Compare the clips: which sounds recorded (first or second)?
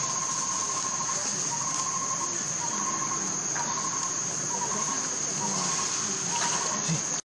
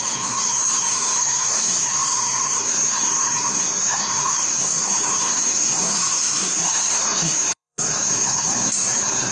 first